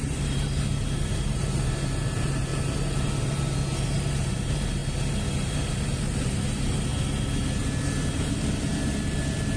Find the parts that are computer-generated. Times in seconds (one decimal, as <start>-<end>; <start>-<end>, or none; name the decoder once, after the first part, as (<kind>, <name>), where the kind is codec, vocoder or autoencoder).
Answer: 0.0-2.5 (vocoder, BigVGAN v2); 4.1-4.8; 5.3-6.9